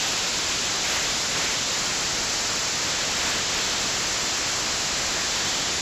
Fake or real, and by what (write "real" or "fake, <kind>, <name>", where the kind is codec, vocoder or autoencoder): real